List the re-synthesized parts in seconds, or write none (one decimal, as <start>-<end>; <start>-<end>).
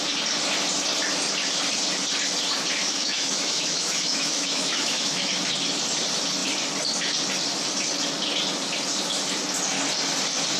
2.8-5.3